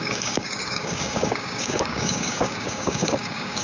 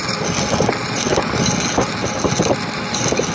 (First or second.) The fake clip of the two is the first